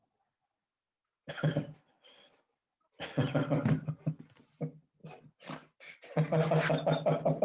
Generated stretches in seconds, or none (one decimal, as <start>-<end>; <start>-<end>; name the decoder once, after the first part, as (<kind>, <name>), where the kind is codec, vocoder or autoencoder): none